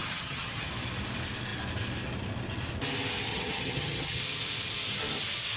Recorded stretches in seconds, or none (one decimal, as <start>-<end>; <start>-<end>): 0.7-3.3; 4.2-5.6